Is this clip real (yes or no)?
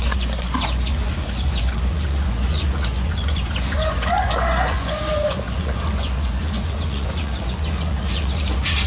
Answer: no